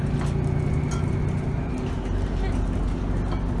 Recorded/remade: recorded